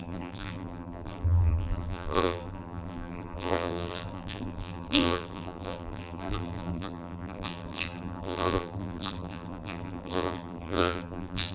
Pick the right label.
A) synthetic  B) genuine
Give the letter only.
A